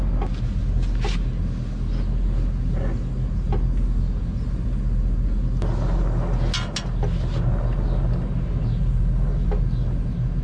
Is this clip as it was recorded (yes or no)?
yes